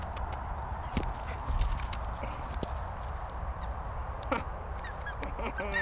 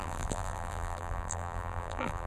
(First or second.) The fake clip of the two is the second